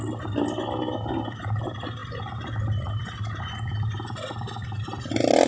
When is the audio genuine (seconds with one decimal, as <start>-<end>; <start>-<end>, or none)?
0.0-5.5